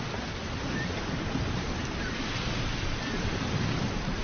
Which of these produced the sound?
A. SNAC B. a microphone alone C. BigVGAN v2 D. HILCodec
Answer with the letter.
B